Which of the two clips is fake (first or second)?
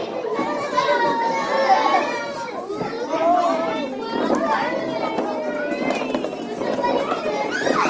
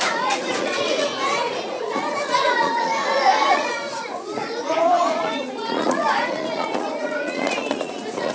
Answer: second